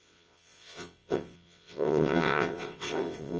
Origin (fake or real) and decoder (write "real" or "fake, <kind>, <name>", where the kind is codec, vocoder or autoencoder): fake, vocoder, WaveNeXt